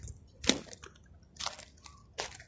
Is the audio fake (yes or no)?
no